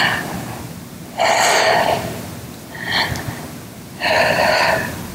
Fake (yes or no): no